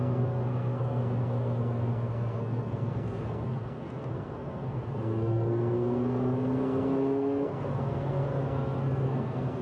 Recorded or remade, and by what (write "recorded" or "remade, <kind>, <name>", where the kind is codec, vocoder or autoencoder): remade, codec, SNAC